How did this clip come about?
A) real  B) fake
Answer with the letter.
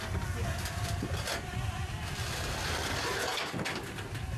A